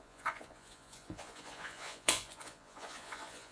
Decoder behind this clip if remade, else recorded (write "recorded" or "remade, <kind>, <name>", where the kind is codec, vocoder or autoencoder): remade, vocoder, Vocos